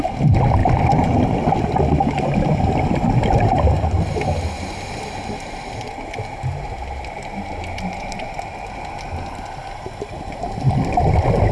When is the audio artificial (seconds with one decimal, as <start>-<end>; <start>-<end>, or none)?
none